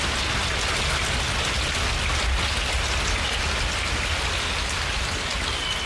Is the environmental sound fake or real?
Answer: real